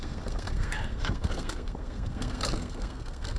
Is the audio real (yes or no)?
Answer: no